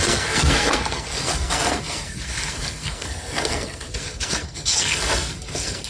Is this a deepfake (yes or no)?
yes